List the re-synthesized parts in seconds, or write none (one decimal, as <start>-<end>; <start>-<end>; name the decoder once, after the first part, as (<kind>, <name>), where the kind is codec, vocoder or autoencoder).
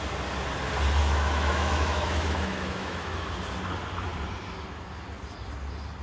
1.0-3.3 (autoencoder, DAC-VAE)